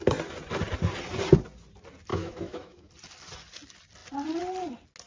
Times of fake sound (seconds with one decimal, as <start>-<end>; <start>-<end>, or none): 2.1-2.9

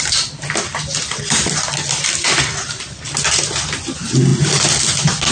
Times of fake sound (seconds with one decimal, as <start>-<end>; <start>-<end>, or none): none

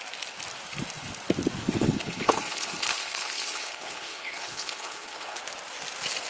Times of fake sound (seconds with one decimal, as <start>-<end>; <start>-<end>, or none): 1.6-5.4

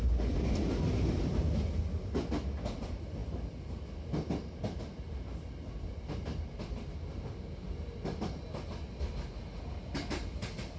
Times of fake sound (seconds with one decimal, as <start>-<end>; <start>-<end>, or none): none

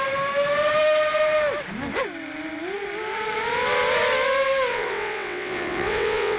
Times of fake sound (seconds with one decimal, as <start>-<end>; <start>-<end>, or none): 4.7-6.4

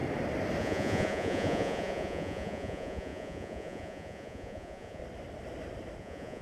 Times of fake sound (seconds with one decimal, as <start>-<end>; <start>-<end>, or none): 0.6-5.0; 6.0-6.4